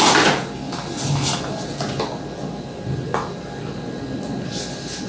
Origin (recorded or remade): recorded